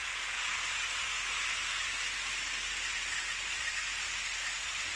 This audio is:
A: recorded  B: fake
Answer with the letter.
A